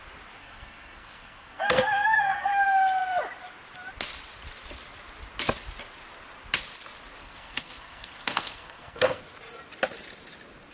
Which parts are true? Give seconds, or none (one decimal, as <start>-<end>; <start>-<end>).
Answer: 0.0-0.4; 2.5-7.2; 9.2-10.7